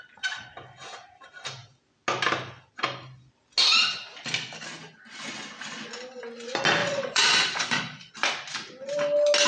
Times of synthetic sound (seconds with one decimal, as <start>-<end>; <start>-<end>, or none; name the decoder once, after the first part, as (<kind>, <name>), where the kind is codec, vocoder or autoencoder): 6.8-8.1 (vocoder, Vocos)